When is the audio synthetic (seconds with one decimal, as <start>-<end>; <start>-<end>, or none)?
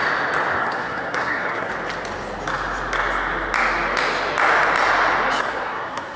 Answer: 0.6-1.7; 5.4-6.2